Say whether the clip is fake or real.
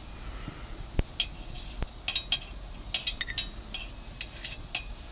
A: real